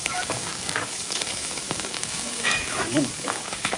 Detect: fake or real fake